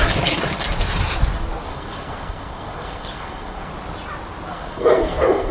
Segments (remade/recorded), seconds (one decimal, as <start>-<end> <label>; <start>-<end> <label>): 0.0-1.7 recorded; 1.7-3.7 remade; 3.7-4.5 recorded; 4.5-5.5 remade